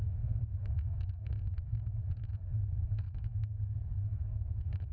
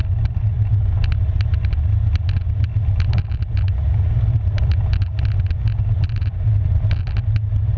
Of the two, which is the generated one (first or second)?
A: first